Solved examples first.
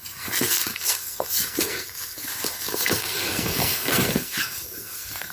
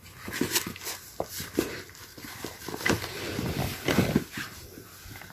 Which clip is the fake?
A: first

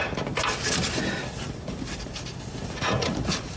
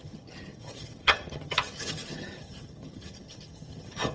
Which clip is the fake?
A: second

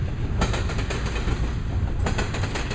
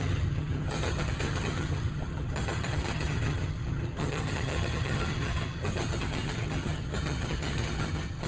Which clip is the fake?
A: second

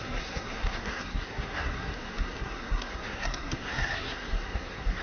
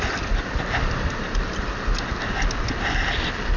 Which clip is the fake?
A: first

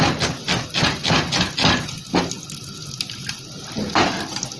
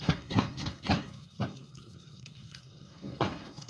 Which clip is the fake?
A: second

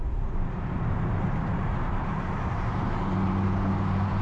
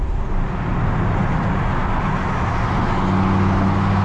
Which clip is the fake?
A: first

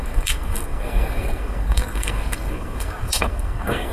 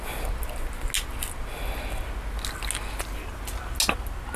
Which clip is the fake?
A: first